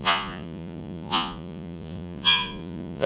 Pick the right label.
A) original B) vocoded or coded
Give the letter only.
B